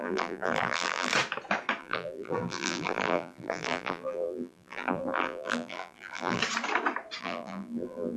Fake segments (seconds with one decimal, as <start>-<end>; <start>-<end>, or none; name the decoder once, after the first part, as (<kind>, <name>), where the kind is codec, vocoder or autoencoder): 0.0-1.1 (vocoder, BigVGAN v2); 1.8-6.4; 7.2-8.2